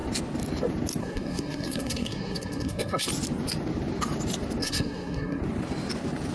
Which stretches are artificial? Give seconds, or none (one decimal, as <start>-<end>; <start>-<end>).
1.0-3.1; 4.6-5.4